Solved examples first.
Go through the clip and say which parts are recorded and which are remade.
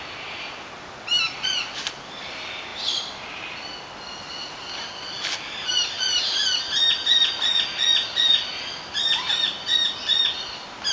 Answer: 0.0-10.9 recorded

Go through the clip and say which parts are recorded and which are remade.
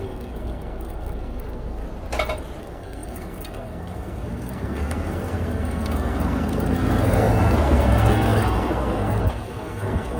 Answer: 0.0-1.8 remade; 1.8-2.6 recorded; 2.6-10.2 remade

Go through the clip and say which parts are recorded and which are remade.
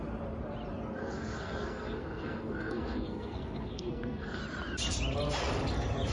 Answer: 0.0-1.0 recorded; 1.0-4.4 remade; 4.4-6.1 recorded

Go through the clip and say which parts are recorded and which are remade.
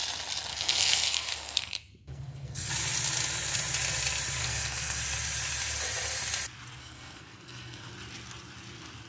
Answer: 0.0-0.5 recorded; 0.5-2.7 remade; 2.7-4.4 recorded; 4.4-5.0 remade; 5.0-6.8 recorded; 6.8-7.9 remade; 7.9-9.1 recorded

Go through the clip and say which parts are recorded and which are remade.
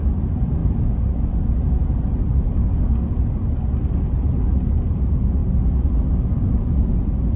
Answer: 0.0-7.4 recorded